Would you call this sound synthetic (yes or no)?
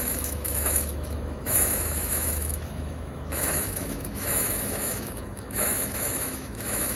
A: yes